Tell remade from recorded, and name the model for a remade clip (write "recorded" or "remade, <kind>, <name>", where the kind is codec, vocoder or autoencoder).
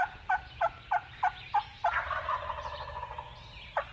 recorded